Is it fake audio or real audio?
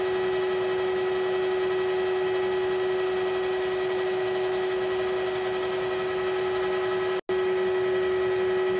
real